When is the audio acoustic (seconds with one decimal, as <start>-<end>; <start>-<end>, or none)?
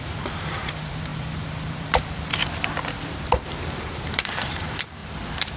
2.4-3.3; 5.0-5.6